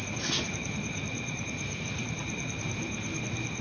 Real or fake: fake